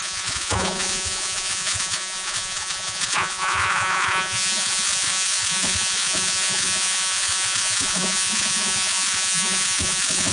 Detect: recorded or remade remade